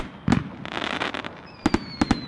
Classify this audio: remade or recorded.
recorded